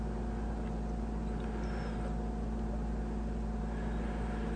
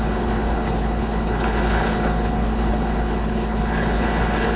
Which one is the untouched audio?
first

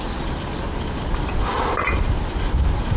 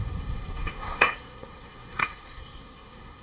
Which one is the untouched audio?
first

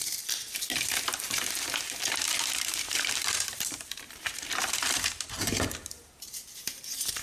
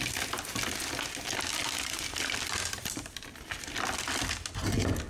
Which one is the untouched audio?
second